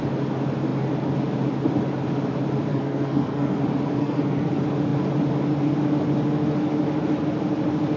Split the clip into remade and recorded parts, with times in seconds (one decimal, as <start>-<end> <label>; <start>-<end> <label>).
0.0-2.7 recorded; 2.7-3.6 remade; 3.6-4.0 recorded; 4.0-4.5 remade; 4.5-8.0 recorded